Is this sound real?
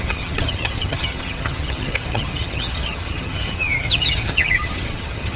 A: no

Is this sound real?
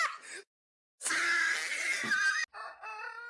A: yes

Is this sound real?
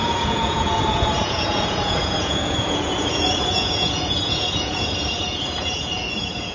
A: no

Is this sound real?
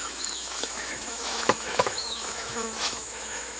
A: no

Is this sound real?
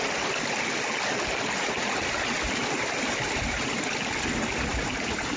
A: yes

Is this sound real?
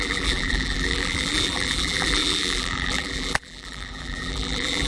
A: no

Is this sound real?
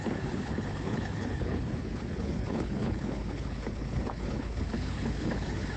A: no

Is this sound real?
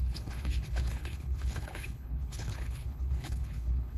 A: no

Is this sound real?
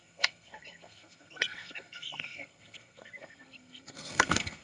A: no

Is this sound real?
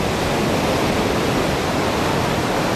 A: yes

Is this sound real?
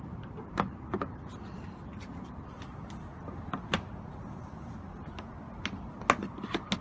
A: yes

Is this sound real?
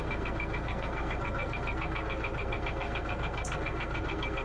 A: no